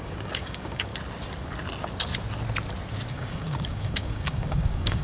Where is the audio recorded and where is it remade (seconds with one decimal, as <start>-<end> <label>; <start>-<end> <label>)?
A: 0.0-0.9 remade; 0.9-3.1 recorded; 3.1-5.0 remade